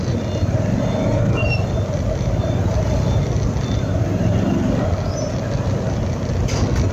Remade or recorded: recorded